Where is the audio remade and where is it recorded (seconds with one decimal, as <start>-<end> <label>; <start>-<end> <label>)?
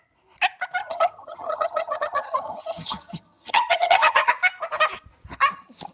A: 0.0-0.8 recorded; 0.8-4.3 remade; 4.3-5.9 recorded